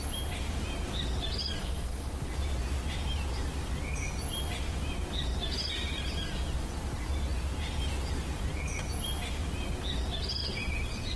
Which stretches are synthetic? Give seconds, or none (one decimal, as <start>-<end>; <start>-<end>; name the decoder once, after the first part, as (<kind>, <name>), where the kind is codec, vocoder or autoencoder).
1.6-2.1 (codec, SNAC)